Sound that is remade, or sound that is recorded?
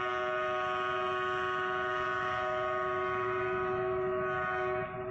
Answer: recorded